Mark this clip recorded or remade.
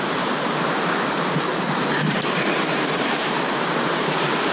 remade